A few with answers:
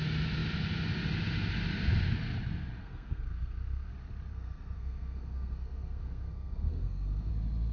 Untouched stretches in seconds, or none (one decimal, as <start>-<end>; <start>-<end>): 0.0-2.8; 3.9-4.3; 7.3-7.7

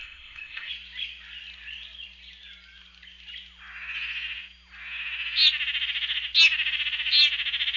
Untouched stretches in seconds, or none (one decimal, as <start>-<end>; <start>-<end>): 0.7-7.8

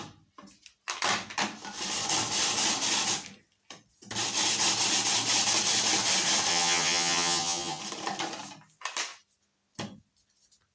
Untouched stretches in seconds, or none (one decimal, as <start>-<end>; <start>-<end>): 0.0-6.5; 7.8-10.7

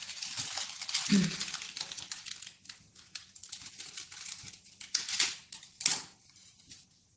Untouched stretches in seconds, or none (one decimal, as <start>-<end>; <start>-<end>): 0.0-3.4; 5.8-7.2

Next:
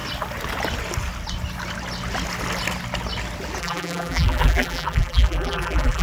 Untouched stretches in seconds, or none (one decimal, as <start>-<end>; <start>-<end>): 0.0-3.6

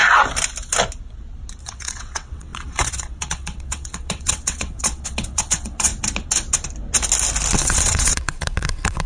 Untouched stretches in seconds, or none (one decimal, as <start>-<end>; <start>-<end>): 0.0-1.6; 5.9-7.6

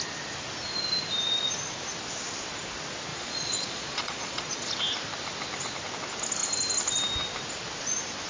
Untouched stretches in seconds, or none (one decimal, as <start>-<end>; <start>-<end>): 0.0-3.1; 4.7-8.3

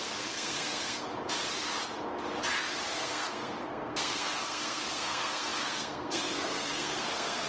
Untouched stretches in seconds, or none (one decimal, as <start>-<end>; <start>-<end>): 1.1-2.9